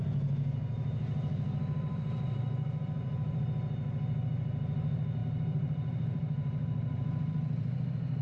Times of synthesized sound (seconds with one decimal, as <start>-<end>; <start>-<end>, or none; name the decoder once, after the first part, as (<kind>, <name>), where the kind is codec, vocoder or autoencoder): 0.7-3.4 (vocoder, BigVGAN v2); 5.2-8.2